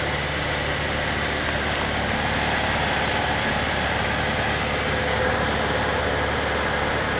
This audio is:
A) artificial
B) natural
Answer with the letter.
B